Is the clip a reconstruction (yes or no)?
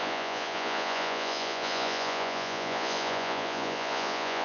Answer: yes